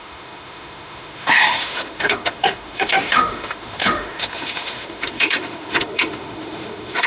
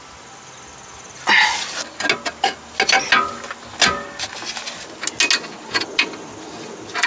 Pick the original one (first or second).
second